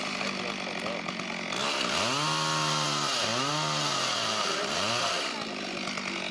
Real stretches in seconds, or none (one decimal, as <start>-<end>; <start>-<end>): 0.0-6.3